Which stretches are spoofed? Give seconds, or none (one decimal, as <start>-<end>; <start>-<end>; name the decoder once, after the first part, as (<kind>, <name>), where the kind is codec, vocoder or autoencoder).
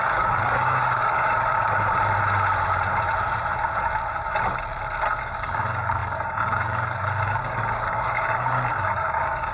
0.0-1.5 (codec, DAC); 5.2-9.5